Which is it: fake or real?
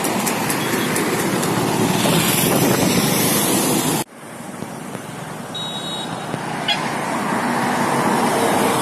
real